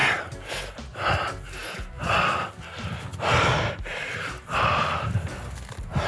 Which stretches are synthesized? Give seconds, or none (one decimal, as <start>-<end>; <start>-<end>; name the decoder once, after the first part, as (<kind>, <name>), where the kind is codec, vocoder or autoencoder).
none